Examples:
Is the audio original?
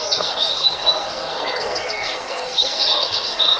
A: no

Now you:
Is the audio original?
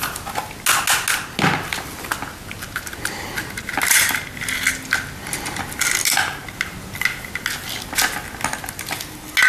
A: yes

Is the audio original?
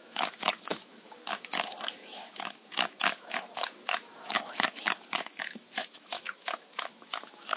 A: no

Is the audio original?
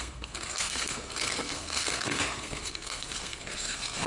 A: no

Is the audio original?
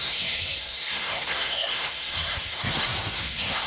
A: no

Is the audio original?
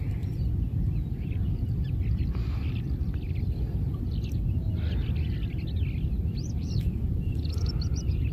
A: yes